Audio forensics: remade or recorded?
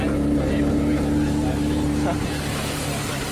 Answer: recorded